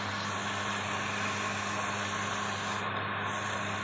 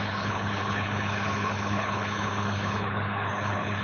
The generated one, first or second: second